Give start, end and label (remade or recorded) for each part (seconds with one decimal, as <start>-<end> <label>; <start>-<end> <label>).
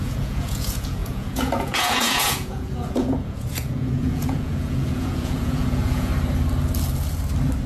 0.0-6.1 remade; 6.1-7.7 recorded